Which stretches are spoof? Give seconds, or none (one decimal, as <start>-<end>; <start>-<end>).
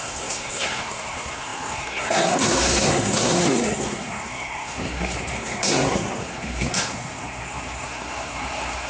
0.0-8.9